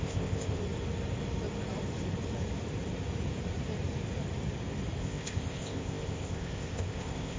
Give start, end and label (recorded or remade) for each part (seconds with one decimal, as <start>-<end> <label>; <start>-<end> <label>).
0.0-0.6 remade; 0.6-5.0 recorded; 5.0-7.4 remade